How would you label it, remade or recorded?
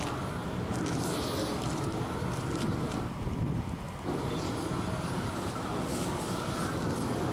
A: recorded